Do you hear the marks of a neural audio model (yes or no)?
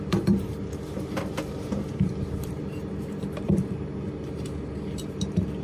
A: yes